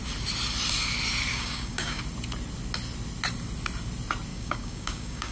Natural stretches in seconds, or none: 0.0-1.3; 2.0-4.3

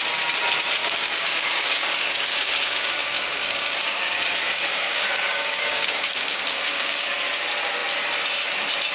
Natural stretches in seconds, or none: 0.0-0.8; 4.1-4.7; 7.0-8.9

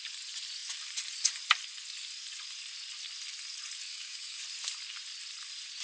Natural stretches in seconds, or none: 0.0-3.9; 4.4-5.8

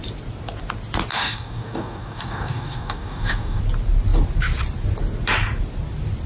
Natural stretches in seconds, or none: 0.0-1.1; 3.6-6.3

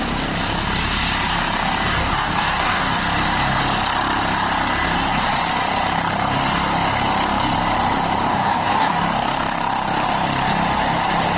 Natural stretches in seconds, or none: 0.0-1.9; 3.0-8.3; 9.0-11.4

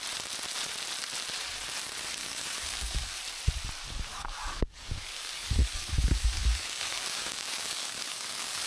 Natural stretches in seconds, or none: 0.0-2.2; 3.2-4.1

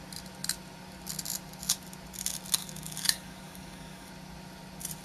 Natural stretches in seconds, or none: 0.0-2.6; 4.1-5.0